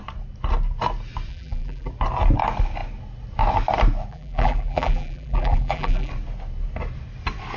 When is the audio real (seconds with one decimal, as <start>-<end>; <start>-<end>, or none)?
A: 0.0-1.3; 1.9-4.1; 6.1-7.6